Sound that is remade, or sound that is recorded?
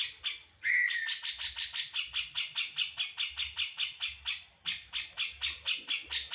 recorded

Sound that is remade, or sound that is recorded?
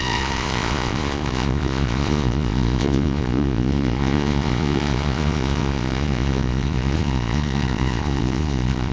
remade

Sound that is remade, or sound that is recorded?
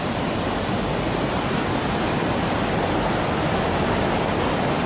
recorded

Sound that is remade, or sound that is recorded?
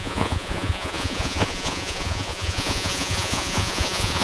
remade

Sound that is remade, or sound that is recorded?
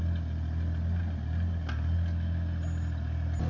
recorded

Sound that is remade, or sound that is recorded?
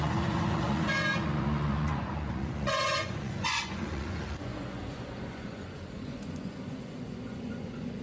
remade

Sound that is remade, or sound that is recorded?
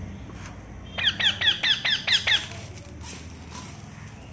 recorded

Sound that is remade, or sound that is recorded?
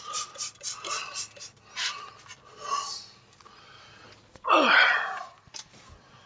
recorded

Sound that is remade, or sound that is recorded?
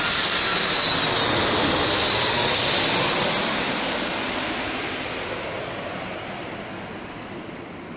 recorded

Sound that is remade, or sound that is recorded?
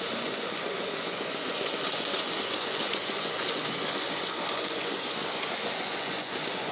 remade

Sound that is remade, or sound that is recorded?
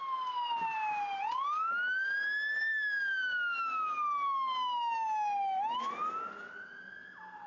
recorded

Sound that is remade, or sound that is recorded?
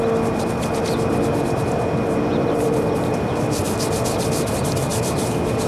recorded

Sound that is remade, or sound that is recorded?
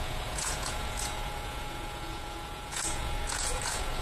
remade